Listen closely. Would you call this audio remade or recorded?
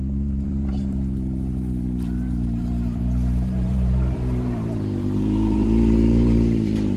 remade